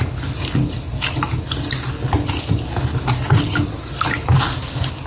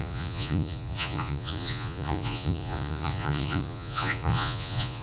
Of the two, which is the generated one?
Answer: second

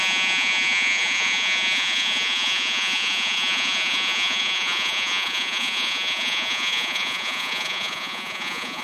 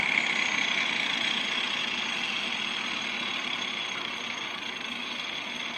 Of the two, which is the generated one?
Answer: first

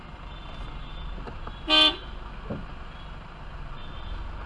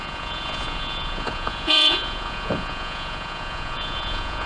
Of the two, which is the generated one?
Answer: second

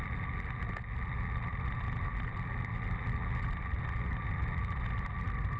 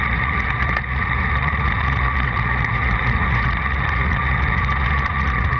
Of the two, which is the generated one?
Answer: second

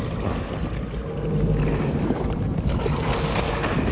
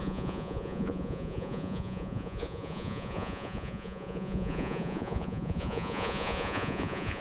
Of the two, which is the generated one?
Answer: second